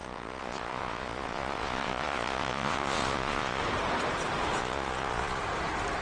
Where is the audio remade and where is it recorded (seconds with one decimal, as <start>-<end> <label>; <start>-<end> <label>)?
0.0-3.6 remade; 3.6-4.6 recorded; 4.6-5.4 remade; 5.4-6.0 recorded